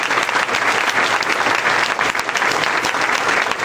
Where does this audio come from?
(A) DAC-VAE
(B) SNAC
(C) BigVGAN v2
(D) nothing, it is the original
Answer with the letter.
D